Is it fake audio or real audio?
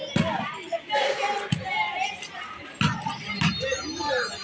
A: real